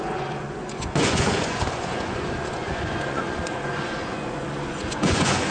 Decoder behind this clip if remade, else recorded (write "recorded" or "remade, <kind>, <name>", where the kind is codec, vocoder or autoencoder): remade, vocoder, Vocos